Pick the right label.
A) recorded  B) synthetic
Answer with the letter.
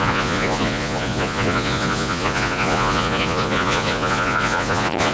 B